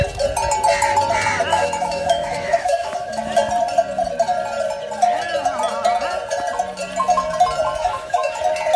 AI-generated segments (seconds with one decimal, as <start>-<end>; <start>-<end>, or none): 1.5-3.2; 7.8-8.4